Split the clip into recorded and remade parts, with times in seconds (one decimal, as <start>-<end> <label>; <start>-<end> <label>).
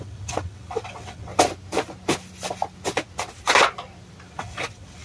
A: 0.0-1.3 remade; 1.3-4.3 recorded; 4.3-5.0 remade